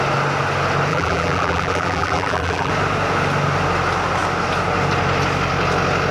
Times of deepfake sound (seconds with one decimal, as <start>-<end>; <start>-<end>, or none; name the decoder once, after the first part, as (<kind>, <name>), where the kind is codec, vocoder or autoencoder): 0.9-2.7 (vocoder, BigVGAN v2)